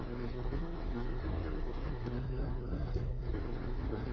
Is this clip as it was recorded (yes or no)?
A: no